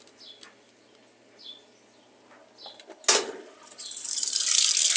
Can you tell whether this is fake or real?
real